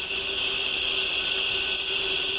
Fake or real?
real